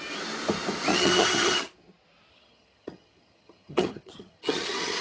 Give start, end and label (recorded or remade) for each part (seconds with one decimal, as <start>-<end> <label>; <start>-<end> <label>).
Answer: 0.0-0.9 recorded; 0.9-1.7 remade; 1.7-2.3 recorded; 2.3-5.0 remade